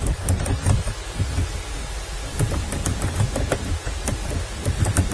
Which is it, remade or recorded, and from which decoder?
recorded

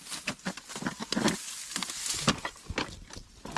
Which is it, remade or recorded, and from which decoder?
recorded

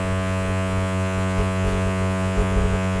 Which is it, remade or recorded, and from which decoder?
remade, vocoder, Vocos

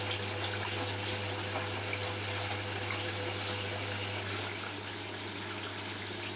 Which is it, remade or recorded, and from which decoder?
recorded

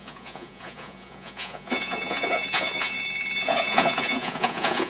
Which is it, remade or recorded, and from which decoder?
remade, vocoder, Vocos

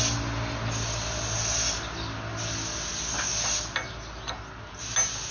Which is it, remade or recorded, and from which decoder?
recorded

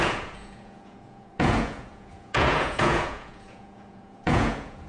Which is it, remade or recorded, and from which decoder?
remade, vocoder, Vocos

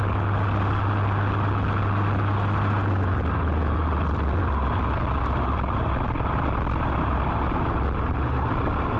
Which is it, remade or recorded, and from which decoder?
recorded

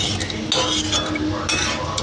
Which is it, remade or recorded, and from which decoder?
recorded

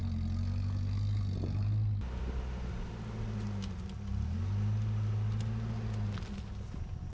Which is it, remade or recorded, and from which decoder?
recorded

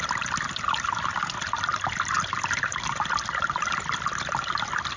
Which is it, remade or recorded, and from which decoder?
recorded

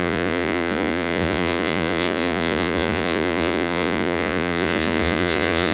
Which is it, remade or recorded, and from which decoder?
remade, vocoder, Vocos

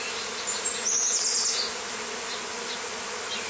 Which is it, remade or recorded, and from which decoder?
recorded